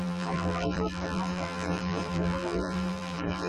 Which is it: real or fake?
fake